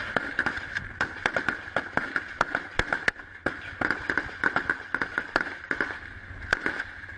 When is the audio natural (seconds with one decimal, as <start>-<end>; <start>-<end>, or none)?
0.0-7.2